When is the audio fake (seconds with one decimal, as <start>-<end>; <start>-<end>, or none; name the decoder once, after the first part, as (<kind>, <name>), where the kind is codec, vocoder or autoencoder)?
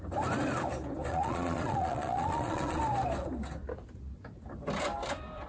1.1-2.8 (vocoder, Vocos)